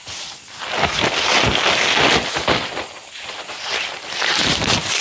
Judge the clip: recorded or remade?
recorded